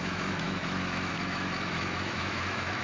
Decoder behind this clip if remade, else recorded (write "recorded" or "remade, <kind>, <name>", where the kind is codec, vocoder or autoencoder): remade, autoencoder, DAC-VAE